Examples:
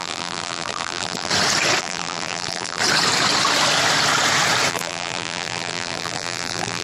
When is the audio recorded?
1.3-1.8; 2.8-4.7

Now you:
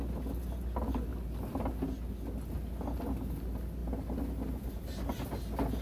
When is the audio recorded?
0.0-5.8

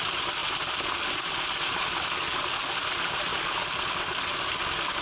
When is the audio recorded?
0.0-5.0

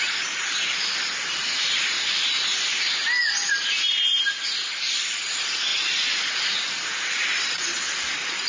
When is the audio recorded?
3.2-4.2

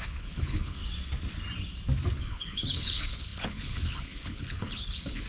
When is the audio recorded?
0.8-2.2

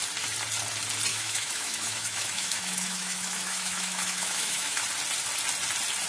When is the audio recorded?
0.0-1.1; 4.8-6.1